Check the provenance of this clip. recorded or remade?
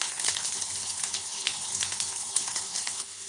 remade